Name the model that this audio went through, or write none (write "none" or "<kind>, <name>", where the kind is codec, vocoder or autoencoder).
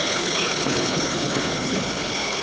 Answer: codec, HILCodec